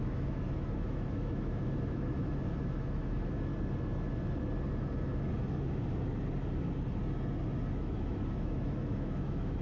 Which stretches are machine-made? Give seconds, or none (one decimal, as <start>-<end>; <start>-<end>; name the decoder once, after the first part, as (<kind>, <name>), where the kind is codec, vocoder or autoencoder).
0.0-3.5 (autoencoder, DAC-VAE); 7.7-9.6